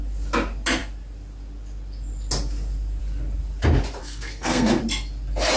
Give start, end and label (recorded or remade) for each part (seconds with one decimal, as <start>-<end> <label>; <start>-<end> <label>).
0.0-4.0 recorded; 4.0-4.8 remade; 4.8-5.6 recorded